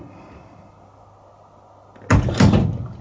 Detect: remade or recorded recorded